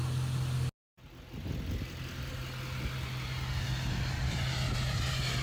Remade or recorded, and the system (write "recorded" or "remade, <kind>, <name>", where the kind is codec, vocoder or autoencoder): recorded